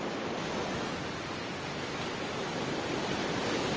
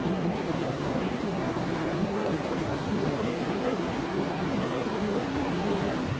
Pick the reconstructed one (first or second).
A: second